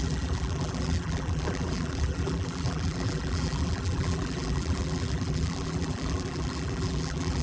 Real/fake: fake